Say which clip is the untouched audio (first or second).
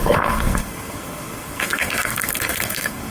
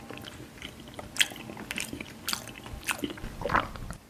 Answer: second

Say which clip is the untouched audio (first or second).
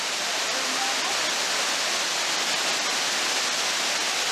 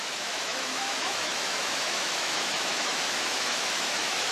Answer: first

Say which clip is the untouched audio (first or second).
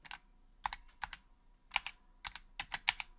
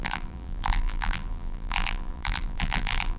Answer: first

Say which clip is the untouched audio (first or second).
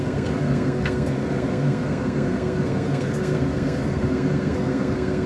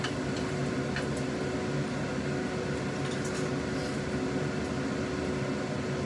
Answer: second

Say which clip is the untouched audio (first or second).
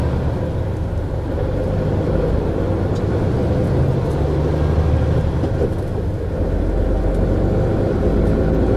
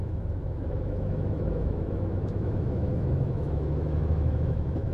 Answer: first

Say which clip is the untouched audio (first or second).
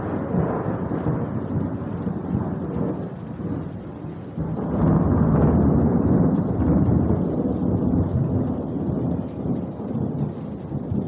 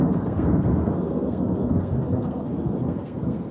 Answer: first